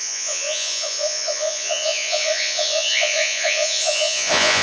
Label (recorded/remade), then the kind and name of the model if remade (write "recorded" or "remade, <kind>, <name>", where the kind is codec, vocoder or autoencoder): remade, vocoder, Vocos